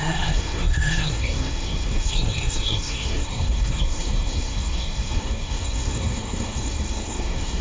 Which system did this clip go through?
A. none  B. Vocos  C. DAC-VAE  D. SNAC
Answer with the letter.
D